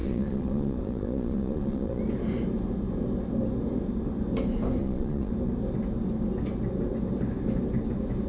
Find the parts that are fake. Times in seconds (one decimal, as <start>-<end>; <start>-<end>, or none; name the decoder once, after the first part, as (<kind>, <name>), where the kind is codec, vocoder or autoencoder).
0.0-2.0 (vocoder, Vocos); 4.8-5.3